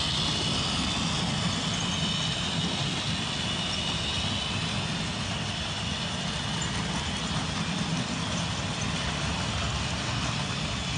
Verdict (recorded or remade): recorded